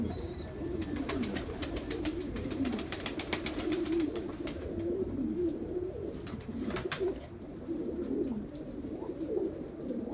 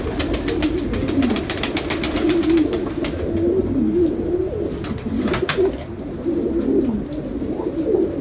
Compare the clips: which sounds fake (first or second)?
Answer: first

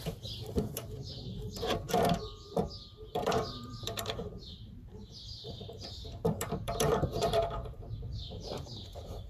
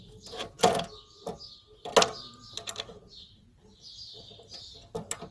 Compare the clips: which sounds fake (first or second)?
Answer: first